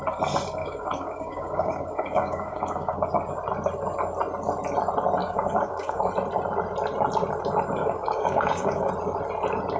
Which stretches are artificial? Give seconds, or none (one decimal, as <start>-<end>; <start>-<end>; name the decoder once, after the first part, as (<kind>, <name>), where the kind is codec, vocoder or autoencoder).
0.6-3.1 (codec, DAC); 5.2-6.1; 7.8-8.9